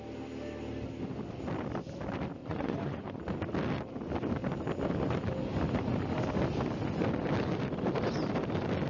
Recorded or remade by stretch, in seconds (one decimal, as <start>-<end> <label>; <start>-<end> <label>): 0.0-2.4 recorded; 2.4-3.2 remade; 3.2-8.9 recorded